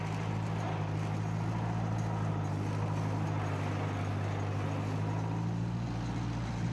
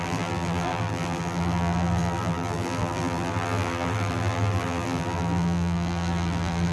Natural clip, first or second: first